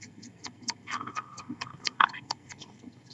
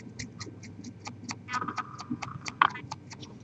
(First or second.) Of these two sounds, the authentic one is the second